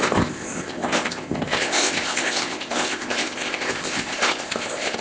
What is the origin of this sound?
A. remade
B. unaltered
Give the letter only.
A